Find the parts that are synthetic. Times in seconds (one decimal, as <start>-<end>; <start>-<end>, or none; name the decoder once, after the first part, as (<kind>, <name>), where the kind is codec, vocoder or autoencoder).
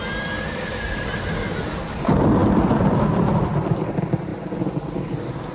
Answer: none